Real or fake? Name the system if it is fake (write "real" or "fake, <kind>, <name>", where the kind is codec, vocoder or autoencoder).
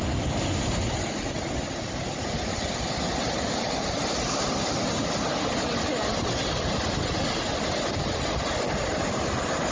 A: real